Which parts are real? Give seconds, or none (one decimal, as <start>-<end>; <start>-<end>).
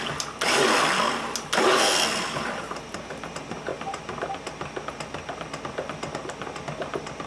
0.0-7.3